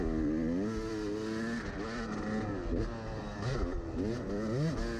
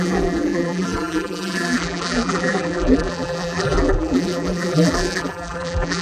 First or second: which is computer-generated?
second